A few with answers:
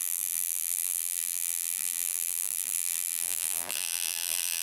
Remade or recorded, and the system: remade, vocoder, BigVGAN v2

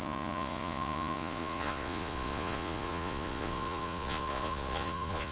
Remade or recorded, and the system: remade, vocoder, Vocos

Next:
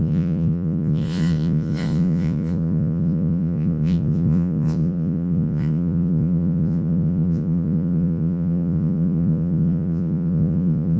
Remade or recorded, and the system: remade, vocoder, Vocos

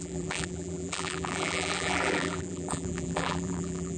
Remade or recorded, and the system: remade, vocoder, BigVGAN v2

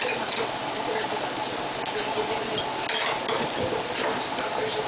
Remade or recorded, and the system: recorded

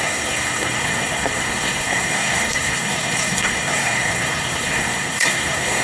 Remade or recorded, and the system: remade, codec, SNAC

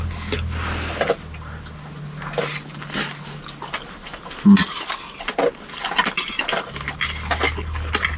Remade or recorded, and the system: recorded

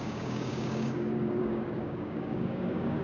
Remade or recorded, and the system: remade, codec, DAC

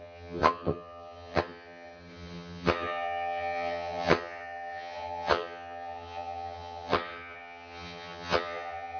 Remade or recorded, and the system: remade, vocoder, HiFi-GAN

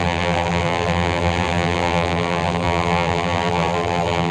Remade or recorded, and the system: remade, vocoder, BigVGAN v2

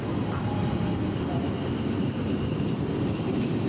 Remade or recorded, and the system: recorded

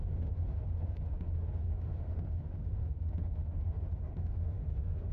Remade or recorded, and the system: remade, autoencoder, DAC-VAE